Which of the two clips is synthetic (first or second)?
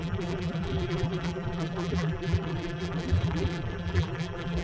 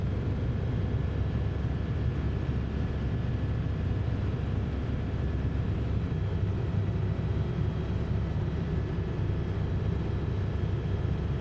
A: first